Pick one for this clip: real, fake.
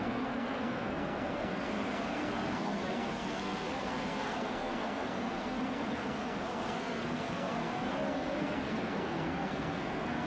fake